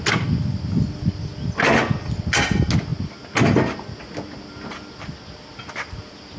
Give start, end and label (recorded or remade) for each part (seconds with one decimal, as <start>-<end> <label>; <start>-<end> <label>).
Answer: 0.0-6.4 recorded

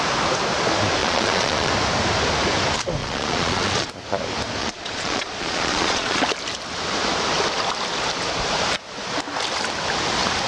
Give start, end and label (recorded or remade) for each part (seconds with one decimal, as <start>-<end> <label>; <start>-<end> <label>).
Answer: 0.0-1.0 recorded; 1.0-1.7 remade; 1.7-3.0 recorded; 3.0-3.9 remade; 3.9-4.6 recorded; 4.6-6.2 remade; 6.2-10.5 recorded

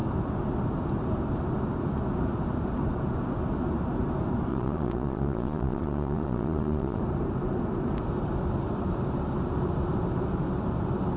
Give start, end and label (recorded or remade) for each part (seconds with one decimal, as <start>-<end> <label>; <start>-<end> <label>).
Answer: 0.0-4.5 recorded; 4.5-7.0 remade; 7.0-11.2 recorded